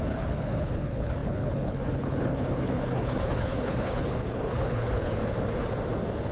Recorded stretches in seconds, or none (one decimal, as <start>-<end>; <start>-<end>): 5.2-6.3